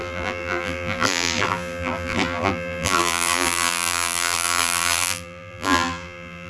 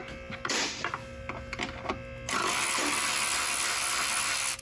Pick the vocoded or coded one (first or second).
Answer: first